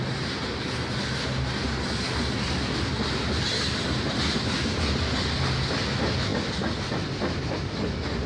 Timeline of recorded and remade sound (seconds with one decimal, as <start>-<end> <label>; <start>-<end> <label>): 0.0-8.3 recorded